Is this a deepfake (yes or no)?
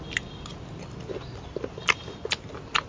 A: no